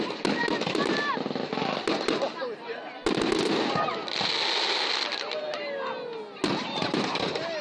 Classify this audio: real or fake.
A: real